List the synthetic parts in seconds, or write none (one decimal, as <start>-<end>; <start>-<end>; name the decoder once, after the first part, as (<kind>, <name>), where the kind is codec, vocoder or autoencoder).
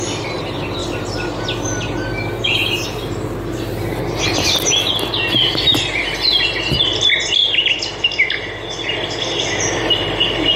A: none